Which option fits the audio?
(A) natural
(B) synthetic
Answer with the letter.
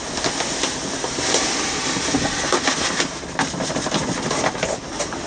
A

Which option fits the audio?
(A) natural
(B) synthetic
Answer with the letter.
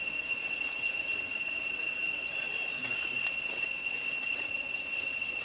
B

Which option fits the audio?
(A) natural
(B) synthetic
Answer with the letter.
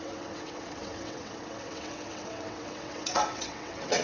B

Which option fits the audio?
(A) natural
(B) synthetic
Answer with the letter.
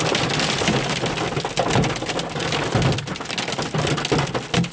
A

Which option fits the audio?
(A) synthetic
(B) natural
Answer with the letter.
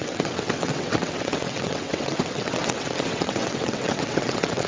A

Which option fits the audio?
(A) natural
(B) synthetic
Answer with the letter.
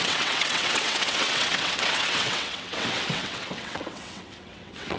B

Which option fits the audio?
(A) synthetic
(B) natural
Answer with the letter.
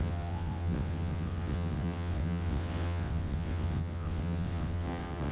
A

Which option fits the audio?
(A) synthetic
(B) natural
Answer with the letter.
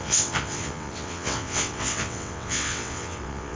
A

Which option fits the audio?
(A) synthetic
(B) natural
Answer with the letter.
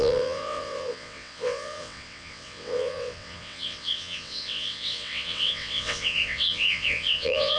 A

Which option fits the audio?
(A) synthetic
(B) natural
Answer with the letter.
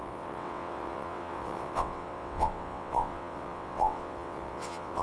A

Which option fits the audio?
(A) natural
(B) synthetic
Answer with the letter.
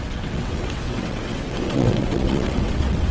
B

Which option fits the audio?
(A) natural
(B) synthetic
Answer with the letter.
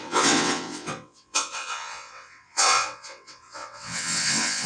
B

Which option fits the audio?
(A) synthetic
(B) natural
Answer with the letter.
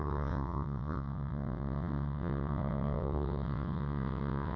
A